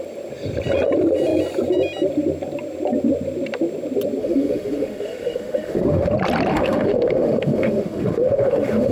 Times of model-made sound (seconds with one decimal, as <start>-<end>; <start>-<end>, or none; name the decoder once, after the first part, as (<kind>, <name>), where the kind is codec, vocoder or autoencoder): 4.2-6.1 (autoencoder, DAC-VAE); 6.5-8.9